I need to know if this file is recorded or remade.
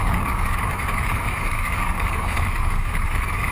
remade